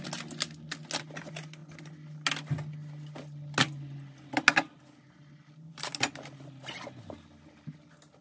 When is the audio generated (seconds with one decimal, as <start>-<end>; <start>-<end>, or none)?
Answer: none